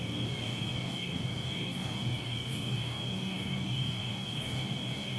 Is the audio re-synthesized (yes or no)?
yes